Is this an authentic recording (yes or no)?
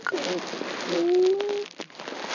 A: yes